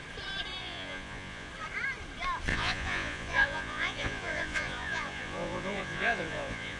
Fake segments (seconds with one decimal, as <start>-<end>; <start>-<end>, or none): 0.6-1.5; 2.5-6.8

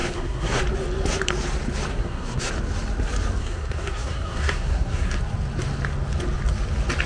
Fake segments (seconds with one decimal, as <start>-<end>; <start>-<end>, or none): 0.0-0.6; 1.9-2.5; 3.4-5.2

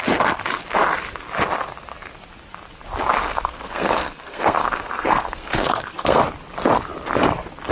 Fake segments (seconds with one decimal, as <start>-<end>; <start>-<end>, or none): 3.3-6.2

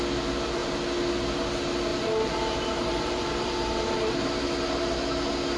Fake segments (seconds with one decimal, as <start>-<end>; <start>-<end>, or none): 1.9-4.5

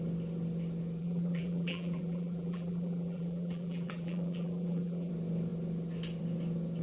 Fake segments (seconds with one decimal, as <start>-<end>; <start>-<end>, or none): 1.0-5.1

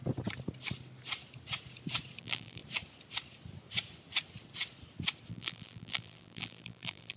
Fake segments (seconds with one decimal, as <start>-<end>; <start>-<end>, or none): 2.2-2.6; 5.3-7.2